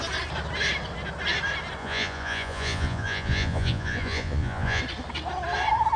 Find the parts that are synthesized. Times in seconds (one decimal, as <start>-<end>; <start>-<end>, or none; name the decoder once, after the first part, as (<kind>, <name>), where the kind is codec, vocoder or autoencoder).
1.8-4.8 (vocoder, Vocos)